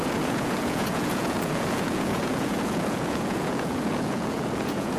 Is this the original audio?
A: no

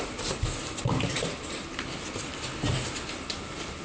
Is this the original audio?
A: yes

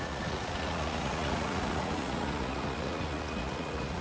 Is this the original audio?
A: no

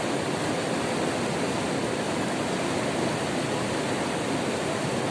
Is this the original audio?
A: yes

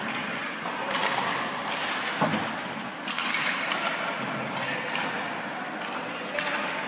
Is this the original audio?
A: yes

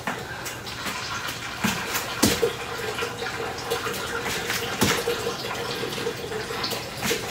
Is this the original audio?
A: yes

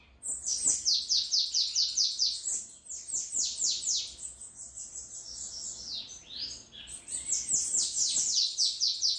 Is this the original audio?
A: yes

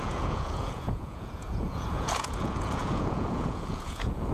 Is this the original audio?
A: no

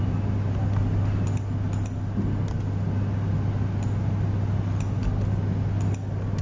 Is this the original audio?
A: yes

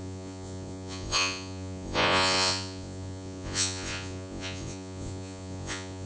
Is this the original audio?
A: no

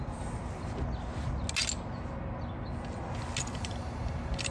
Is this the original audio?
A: yes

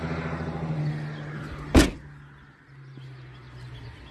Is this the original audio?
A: yes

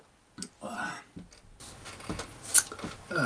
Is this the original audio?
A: yes